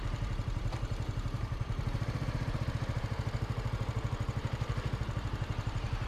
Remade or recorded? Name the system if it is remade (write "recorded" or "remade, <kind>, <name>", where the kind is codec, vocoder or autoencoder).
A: remade, vocoder, BigVGAN v2